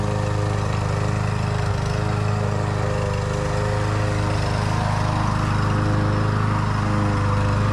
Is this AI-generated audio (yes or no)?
no